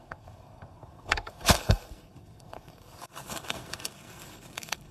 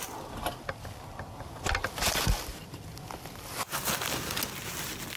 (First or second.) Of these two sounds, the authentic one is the second